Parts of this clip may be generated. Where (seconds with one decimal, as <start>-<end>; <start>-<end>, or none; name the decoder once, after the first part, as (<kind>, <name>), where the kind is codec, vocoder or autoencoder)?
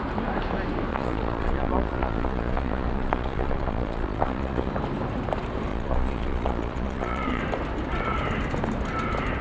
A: 0.9-4.7 (vocoder, Vocos); 5.7-7.4